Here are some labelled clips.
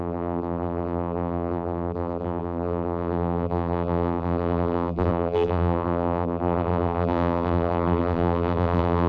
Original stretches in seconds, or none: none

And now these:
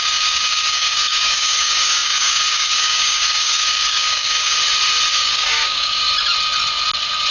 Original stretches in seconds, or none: 4.5-5.1; 6.0-7.3

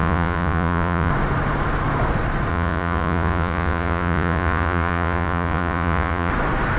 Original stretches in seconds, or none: 1.1-2.5; 6.3-6.8

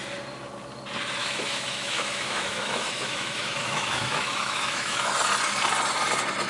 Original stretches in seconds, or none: 0.0-1.2; 5.1-6.5

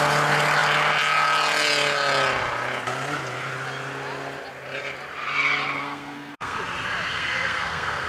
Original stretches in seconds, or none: 0.0-5.8; 6.6-7.1